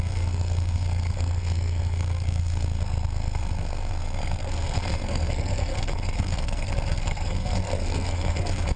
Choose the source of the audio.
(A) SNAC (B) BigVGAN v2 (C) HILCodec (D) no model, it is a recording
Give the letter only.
A